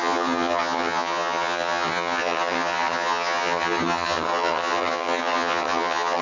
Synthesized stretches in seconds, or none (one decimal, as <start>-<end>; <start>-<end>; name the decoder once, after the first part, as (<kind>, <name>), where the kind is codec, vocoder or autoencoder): 0.0-6.2 (vocoder, HiFi-GAN)